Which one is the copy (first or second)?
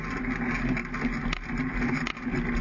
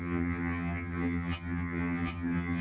second